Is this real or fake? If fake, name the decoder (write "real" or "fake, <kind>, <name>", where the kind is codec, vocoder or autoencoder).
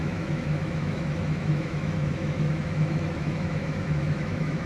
fake, autoencoder, DAC-VAE